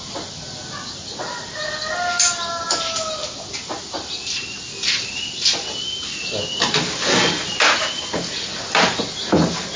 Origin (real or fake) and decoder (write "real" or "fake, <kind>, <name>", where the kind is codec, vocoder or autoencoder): real